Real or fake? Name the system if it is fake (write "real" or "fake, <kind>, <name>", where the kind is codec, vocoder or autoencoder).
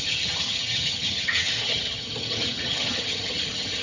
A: fake, vocoder, HiFi-GAN